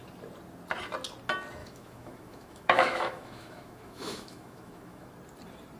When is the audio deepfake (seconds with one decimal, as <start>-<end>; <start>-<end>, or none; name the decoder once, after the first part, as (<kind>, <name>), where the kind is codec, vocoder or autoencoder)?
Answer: 1.6-5.1 (autoencoder, DAC-VAE)